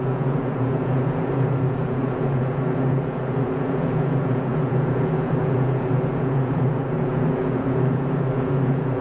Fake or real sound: fake